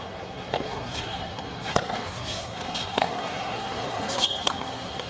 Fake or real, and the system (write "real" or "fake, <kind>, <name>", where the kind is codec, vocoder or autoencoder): fake, codec, SNAC